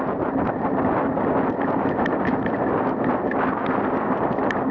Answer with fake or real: real